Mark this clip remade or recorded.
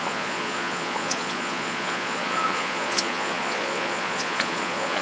remade